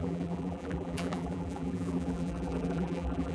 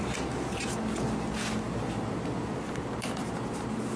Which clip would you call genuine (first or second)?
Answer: second